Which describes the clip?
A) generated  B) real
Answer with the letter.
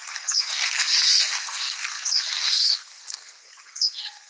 A